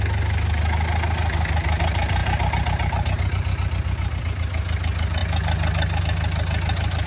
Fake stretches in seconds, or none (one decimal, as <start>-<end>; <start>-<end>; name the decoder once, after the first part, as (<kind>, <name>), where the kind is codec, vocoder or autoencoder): none